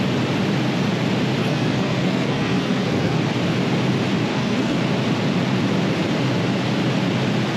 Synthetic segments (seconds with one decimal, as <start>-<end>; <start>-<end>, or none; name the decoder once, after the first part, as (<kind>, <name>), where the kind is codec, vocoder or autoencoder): 1.4-3.2 (codec, SNAC); 4.3-4.8

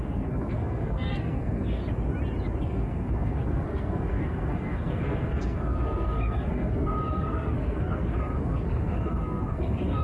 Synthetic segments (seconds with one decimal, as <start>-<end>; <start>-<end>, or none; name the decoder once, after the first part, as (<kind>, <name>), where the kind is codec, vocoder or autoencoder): 0.0-1.8 (codec, SNAC); 2.6-10.0

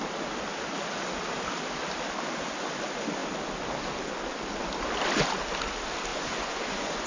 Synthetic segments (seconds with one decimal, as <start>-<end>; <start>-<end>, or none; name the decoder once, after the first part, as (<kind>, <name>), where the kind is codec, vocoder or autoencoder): 6.1-7.1 (vocoder, Vocos)